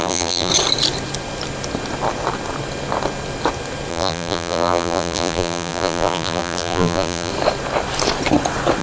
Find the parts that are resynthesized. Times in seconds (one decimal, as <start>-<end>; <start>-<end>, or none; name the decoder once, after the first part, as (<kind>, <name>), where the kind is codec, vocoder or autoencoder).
0.0-0.5 (vocoder, BigVGAN v2); 3.9-7.3